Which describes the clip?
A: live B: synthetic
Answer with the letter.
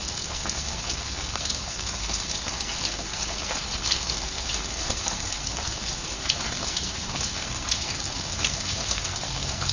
B